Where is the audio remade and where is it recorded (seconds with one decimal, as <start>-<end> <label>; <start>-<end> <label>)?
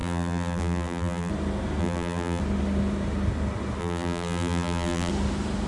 0.0-1.3 remade; 1.3-1.8 recorded; 1.8-2.4 remade; 2.4-3.8 recorded; 3.8-5.1 remade; 5.1-5.7 recorded